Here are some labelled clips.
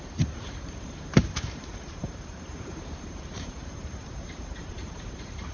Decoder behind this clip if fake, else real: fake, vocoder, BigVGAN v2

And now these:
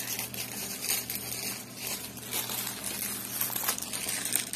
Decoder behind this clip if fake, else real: real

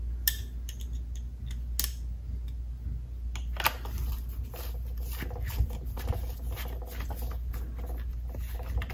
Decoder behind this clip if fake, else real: real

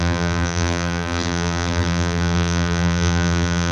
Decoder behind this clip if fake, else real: fake, vocoder, BigVGAN v2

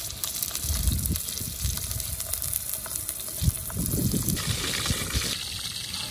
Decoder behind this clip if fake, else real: real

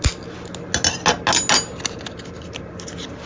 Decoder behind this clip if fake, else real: real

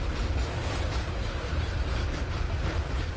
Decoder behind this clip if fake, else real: real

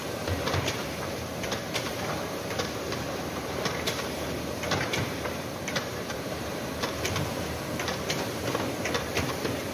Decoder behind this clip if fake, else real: fake, vocoder, BigVGAN v2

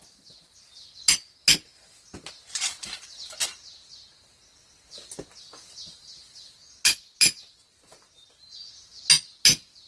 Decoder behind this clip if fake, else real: real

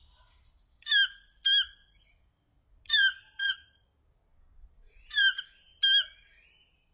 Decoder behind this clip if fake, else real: real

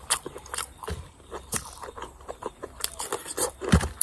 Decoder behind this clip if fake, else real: fake, vocoder, BigVGAN v2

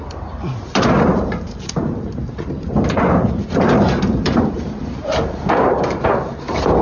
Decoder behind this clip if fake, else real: fake, vocoder, BigVGAN v2